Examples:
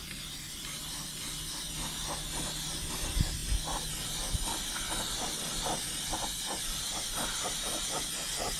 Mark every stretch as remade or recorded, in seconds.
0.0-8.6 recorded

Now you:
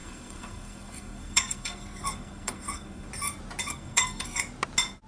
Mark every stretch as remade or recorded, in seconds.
0.0-3.1 remade; 3.1-3.7 recorded; 3.7-4.4 remade; 4.4-5.1 recorded

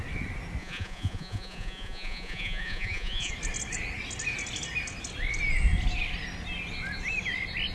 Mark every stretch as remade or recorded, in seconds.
0.0-0.6 recorded; 0.6-3.3 remade; 3.3-7.7 recorded

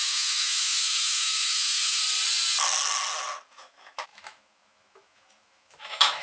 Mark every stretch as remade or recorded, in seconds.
0.0-2.0 remade; 2.0-3.5 recorded; 3.5-6.2 remade

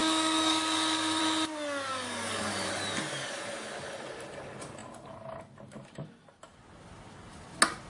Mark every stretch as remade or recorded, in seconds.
0.0-1.2 remade; 1.2-1.9 recorded; 1.9-2.7 remade; 2.7-7.9 recorded

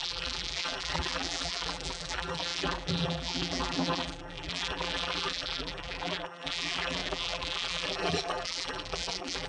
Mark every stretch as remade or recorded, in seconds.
0.0-9.5 remade

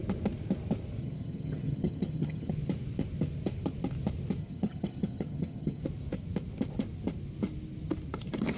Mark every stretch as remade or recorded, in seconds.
0.0-1.0 recorded; 1.0-2.5 remade; 2.5-4.4 recorded; 4.4-5.8 remade; 5.8-8.6 recorded